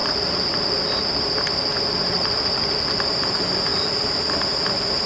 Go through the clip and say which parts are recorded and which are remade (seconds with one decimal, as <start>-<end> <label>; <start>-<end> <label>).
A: 0.0-3.1 remade; 3.1-3.7 recorded; 3.7-4.2 remade; 4.2-5.1 recorded